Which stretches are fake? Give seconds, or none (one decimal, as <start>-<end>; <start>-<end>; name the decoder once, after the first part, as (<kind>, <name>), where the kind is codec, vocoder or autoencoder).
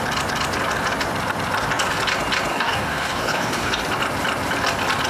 2.5-3.7 (codec, DAC)